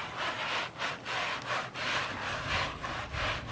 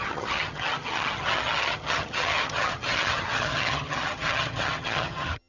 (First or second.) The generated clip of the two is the second